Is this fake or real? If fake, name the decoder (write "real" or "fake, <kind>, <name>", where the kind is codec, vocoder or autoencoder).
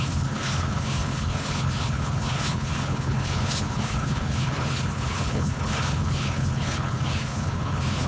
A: fake, codec, HILCodec